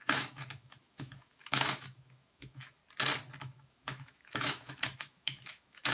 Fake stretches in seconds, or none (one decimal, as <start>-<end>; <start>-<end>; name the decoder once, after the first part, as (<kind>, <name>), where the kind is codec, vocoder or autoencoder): 0.0-2.8 (autoencoder, DAC-VAE); 3.4-5.9